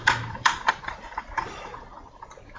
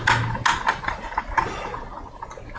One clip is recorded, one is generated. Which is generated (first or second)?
first